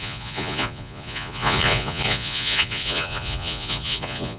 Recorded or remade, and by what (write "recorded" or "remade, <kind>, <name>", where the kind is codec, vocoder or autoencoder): remade, vocoder, Vocos